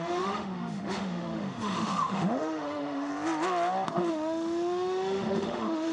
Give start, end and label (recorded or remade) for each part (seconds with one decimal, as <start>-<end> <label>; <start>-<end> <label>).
0.0-3.1 remade; 3.1-4.1 recorded; 4.1-5.9 remade